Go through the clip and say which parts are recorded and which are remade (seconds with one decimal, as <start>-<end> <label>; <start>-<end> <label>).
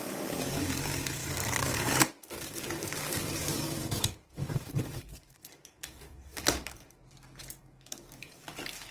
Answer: 0.0-7.0 remade; 7.0-7.6 recorded; 7.6-8.9 remade